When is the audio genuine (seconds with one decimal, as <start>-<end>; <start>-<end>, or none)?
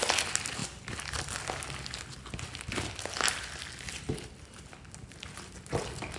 0.0-6.2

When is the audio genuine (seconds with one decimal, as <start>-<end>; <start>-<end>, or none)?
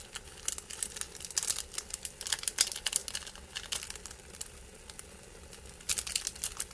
0.0-6.7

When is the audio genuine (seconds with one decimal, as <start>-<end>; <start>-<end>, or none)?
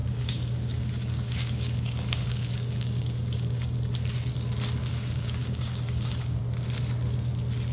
3.8-4.8; 6.4-7.7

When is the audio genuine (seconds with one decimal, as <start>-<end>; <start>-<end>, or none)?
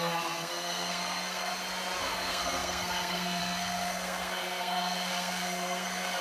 1.5-2.0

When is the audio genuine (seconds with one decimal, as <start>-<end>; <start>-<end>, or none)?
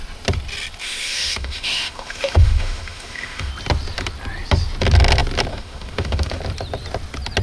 0.0-0.8; 3.5-5.5; 6.4-7.4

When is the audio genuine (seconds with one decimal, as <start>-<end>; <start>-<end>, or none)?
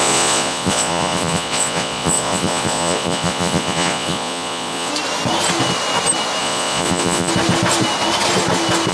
4.9-6.4; 7.3-8.9